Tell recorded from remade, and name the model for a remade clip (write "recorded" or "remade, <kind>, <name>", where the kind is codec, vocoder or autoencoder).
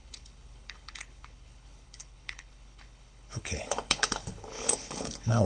remade, codec, HILCodec